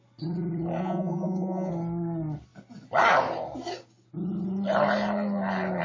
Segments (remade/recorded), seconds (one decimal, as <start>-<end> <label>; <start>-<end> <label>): 0.0-0.8 recorded; 0.8-1.7 remade; 1.7-5.8 recorded